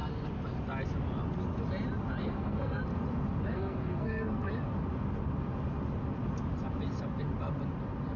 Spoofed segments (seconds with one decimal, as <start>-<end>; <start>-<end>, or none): 2.2-2.8; 3.5-4.5